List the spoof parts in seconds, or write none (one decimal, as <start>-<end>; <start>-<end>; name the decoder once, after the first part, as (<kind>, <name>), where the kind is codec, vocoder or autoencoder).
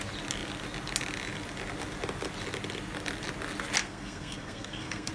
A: 3.8-5.1 (codec, SNAC)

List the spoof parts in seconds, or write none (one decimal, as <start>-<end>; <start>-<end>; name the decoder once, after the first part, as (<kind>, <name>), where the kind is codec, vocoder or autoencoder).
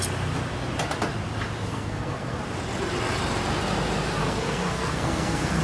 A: 1.7-2.4 (codec, SNAC); 4.2-5.6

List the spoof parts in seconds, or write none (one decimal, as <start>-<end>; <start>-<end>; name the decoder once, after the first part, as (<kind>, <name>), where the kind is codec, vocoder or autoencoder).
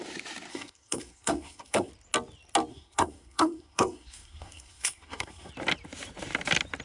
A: 0.5-1.9 (codec, SNAC); 2.7-5.5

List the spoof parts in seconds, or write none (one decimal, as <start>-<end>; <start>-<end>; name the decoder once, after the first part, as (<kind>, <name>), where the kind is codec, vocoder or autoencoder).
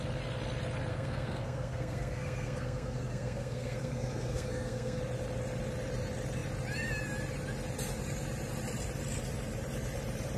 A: 0.9-5.0 (codec, SNAC)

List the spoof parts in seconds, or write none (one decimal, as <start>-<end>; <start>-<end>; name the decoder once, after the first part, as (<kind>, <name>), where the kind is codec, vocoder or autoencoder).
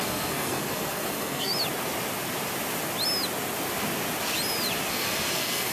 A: 0.0-1.5 (codec, SNAC); 4.9-5.7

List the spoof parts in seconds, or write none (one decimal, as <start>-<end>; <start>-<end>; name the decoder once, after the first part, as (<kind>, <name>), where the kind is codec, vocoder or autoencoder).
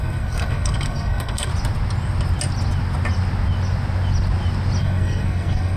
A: 0.0-1.5 (codec, SNAC); 4.8-5.8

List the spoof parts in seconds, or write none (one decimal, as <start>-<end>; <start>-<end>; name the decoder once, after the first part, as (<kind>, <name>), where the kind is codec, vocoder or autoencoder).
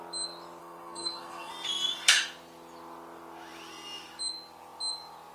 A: 0.6-1.5 (codec, SNAC)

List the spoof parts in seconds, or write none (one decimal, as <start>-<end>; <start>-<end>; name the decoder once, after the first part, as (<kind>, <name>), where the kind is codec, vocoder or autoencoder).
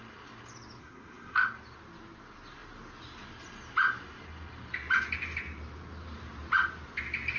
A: 0.8-1.4 (codec, SNAC)